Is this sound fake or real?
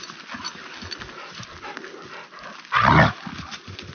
real